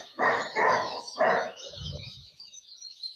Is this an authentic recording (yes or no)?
no